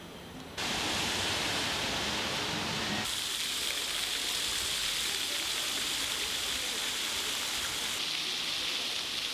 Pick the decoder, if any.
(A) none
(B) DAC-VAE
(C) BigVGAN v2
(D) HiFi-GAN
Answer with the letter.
A